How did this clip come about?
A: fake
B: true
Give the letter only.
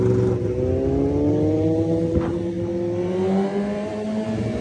B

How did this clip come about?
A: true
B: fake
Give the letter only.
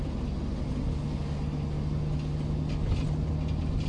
A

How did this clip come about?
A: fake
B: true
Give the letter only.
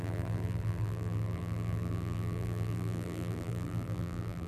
A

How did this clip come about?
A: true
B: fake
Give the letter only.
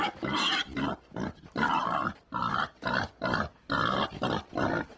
A